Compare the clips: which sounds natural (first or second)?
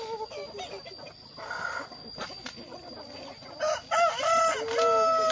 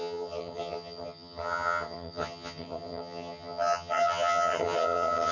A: first